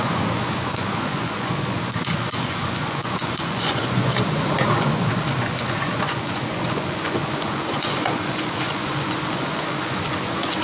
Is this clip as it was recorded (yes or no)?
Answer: no